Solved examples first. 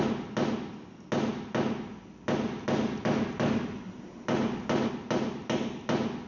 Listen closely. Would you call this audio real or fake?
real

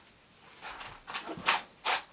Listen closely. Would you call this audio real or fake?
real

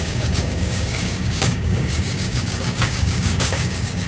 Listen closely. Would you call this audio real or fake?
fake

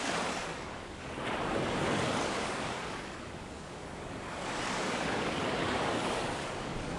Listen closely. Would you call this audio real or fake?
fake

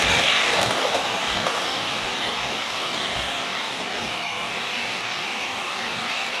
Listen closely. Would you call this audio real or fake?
fake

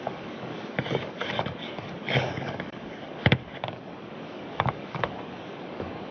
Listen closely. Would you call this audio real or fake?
fake